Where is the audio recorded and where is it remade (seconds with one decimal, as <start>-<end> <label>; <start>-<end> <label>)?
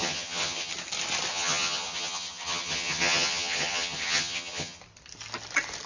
0.0-0.7 remade; 0.7-1.3 recorded; 1.3-4.8 remade; 4.8-5.9 recorded